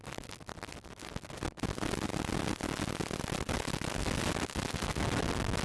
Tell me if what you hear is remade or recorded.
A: recorded